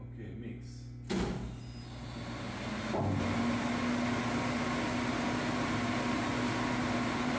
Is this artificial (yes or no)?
no